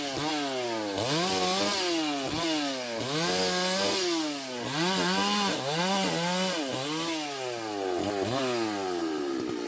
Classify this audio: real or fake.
real